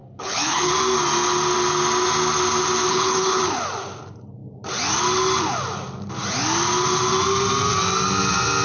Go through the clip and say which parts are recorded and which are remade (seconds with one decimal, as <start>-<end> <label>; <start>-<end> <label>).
0.0-0.7 remade; 0.7-2.9 recorded; 2.9-3.4 remade; 3.4-8.6 recorded